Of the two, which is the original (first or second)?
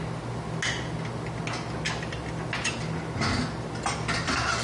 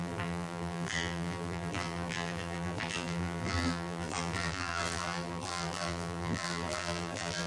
first